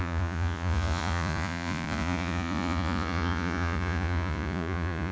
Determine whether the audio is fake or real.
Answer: fake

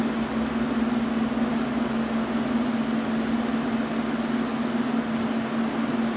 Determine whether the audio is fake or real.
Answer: real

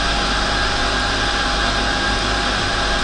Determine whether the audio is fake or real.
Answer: real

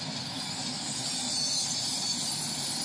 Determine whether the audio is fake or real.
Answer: real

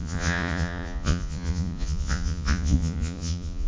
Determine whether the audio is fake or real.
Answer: fake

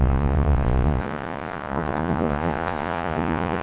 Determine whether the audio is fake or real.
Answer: fake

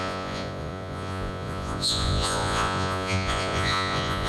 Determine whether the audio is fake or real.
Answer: fake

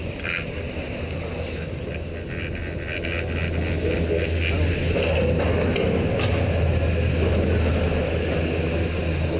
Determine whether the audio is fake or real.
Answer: real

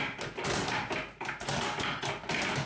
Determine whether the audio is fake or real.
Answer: real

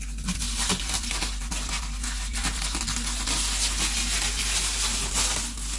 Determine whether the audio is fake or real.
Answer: real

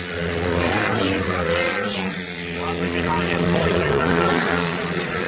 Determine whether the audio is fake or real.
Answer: fake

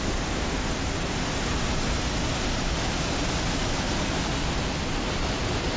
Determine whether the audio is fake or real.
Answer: real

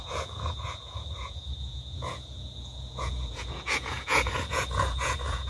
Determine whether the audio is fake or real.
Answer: fake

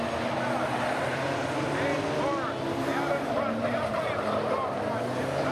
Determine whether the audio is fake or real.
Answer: real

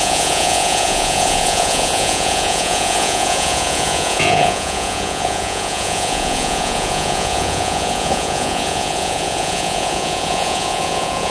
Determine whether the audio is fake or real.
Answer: fake